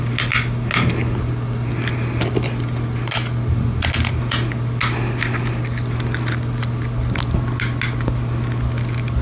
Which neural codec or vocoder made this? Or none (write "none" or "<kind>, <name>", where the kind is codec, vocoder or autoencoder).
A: none